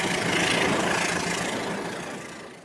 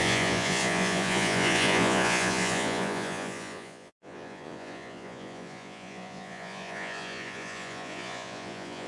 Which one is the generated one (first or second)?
second